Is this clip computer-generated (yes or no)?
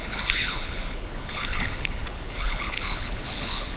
yes